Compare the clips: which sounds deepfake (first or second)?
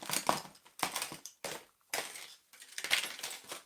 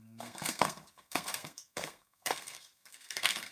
second